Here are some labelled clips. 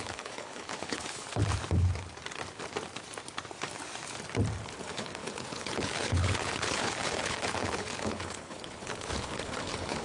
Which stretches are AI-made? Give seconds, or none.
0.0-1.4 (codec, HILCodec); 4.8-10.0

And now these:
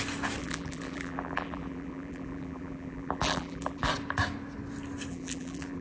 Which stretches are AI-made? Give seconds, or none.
0.4-3.9 (vocoder, BigVGAN v2); 5.1-5.8

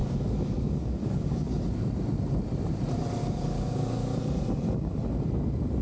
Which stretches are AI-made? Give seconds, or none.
0.0-1.6 (codec, DAC); 3.2-4.2